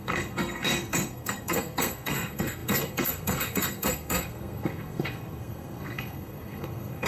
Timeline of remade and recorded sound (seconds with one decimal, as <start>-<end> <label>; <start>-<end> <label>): 0.0-7.1 remade